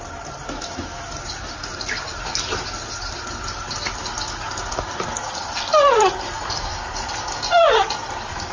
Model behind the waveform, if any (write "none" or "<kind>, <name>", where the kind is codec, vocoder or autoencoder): none